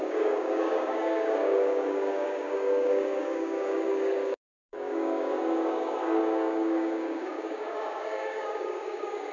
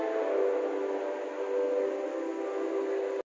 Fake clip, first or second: first